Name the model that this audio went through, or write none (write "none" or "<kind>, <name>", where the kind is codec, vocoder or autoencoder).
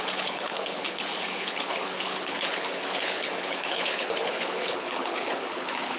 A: codec, HILCodec